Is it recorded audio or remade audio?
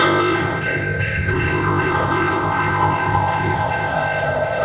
remade